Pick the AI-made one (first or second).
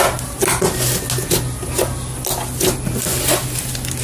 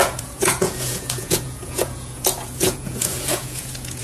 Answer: second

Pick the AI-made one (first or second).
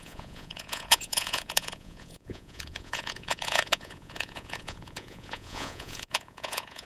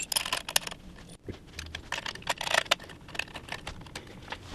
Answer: first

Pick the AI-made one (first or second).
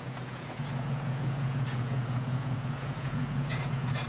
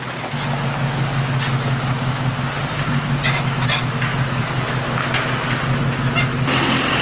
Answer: first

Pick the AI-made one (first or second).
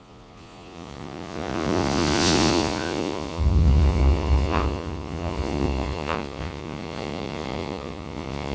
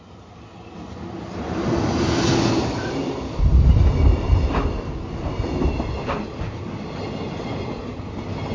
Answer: first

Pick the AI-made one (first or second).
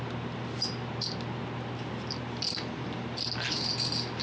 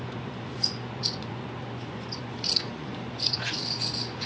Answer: second